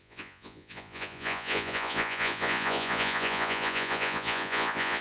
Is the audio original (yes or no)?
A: no